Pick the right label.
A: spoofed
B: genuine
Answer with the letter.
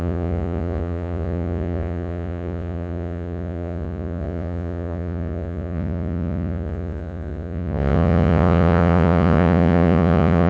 A